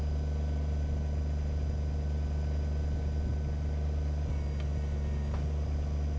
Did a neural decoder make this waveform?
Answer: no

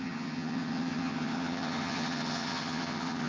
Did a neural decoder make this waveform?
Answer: yes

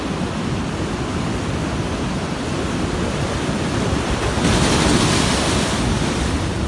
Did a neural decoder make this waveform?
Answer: no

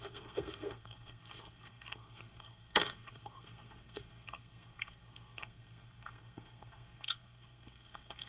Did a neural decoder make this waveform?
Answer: yes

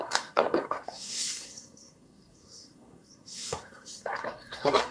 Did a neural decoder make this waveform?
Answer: yes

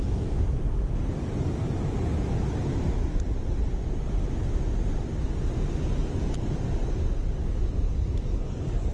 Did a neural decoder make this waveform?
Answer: no